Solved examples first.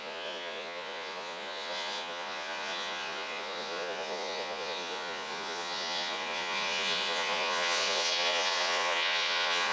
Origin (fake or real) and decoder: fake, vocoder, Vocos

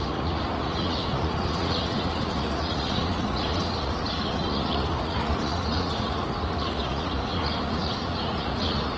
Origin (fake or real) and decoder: fake, vocoder, Vocos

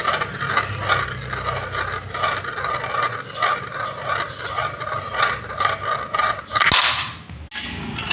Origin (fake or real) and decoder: real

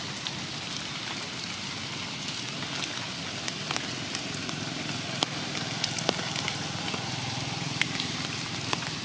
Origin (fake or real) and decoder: real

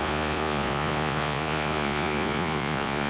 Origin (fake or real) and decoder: fake, vocoder, Vocos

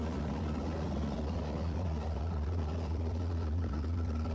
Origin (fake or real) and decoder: fake, vocoder, Vocos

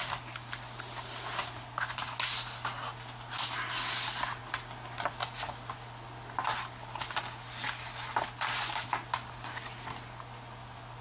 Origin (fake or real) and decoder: real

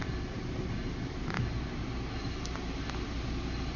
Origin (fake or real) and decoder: real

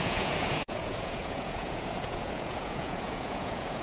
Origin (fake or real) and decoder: fake, vocoder, Vocos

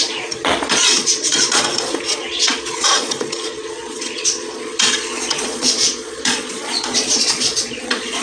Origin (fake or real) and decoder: fake, vocoder, Vocos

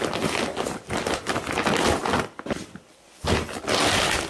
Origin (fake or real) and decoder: real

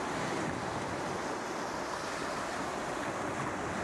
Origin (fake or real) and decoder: real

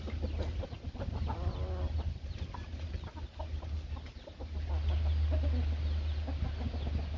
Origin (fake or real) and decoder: real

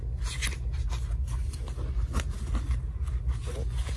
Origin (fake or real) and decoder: real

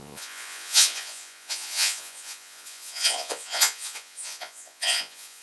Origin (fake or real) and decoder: fake, vocoder, Vocos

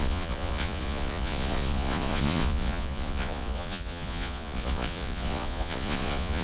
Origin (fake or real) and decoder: fake, vocoder, Vocos